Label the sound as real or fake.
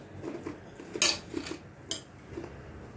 real